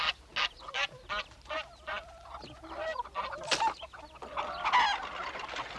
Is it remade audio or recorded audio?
recorded